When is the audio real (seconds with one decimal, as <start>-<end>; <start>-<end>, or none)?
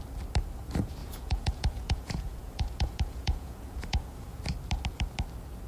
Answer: 0.0-1.0; 4.4-5.7